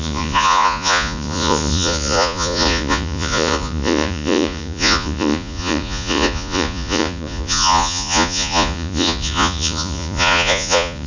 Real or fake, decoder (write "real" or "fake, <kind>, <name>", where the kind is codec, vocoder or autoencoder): fake, vocoder, Vocos